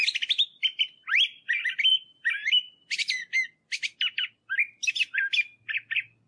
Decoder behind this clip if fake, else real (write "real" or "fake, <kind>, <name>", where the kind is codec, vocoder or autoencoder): real